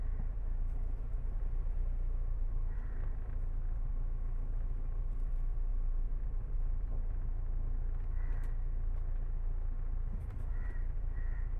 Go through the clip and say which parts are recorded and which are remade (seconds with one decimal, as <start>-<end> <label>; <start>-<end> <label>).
0.0-3.9 remade; 3.9-5.0 recorded; 5.0-7.0 remade; 7.0-10.3 recorded; 10.3-11.6 remade